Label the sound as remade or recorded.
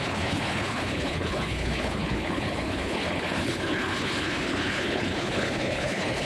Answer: remade